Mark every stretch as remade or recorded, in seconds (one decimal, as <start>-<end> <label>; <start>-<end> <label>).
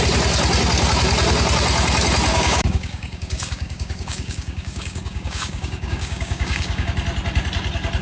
0.0-2.3 recorded; 2.3-6.9 remade; 6.9-8.0 recorded